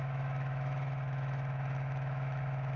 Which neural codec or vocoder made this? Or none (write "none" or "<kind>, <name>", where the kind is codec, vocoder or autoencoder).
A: autoencoder, DAC-VAE